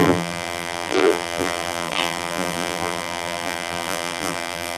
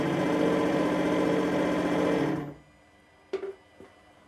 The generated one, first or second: first